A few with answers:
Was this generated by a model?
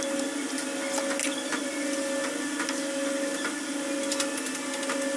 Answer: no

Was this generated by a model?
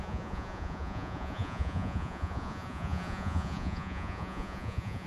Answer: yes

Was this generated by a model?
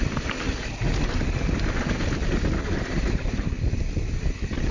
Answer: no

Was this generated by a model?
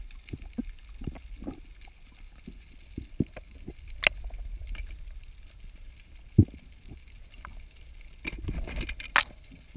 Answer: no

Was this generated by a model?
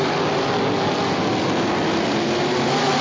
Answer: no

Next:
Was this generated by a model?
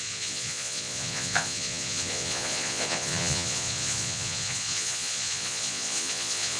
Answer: yes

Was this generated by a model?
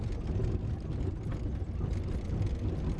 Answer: no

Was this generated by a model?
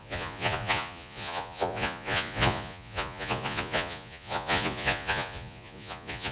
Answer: yes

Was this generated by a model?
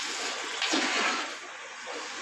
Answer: yes